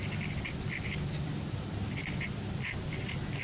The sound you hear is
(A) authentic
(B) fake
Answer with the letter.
A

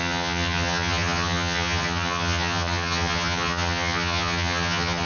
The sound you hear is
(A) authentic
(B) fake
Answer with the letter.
B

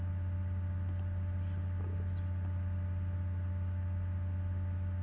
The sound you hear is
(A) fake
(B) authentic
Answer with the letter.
B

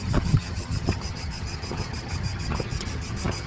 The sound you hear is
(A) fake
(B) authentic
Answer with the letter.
A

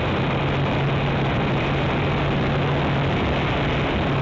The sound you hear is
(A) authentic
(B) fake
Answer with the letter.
A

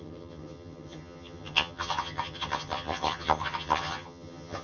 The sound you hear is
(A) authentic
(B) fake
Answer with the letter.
B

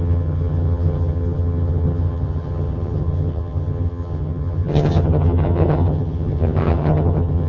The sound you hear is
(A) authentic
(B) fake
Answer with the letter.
B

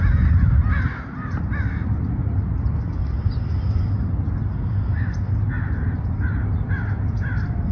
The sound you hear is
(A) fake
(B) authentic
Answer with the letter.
B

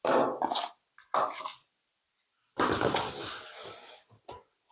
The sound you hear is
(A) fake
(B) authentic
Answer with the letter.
B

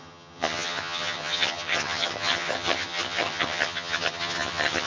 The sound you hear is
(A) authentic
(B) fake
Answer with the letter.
B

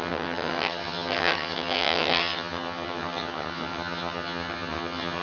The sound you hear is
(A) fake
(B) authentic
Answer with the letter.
A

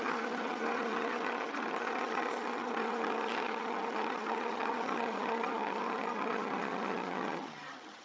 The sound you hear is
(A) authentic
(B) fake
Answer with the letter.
B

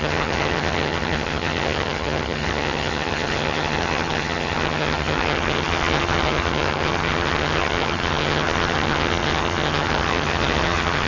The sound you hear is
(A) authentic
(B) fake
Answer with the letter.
B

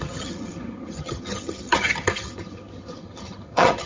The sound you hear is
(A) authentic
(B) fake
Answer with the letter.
B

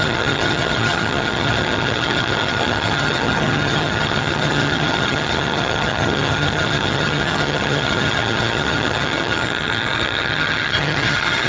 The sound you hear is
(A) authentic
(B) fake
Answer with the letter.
B